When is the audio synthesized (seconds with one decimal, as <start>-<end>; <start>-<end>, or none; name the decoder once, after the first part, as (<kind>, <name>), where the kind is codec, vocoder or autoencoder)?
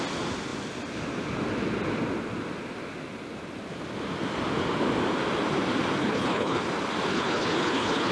6.0-6.6 (codec, HILCodec); 7.1-8.1